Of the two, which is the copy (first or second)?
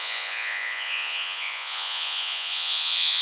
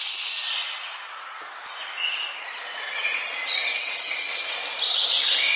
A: first